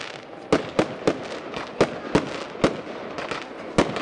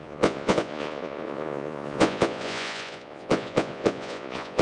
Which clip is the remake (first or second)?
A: second